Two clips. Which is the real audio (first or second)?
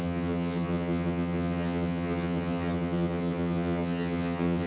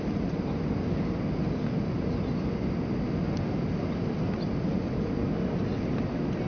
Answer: second